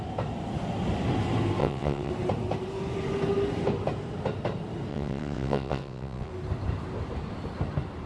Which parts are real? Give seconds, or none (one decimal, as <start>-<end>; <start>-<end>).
0.0-1.6; 2.1-4.9; 6.3-8.1